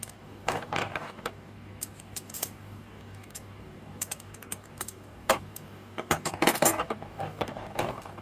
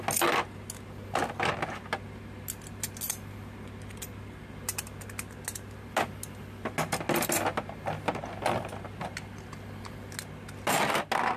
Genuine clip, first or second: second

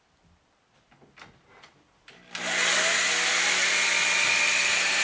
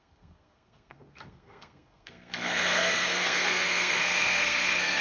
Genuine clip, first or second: first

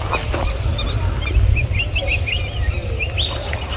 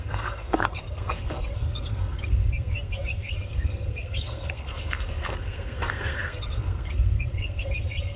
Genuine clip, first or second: first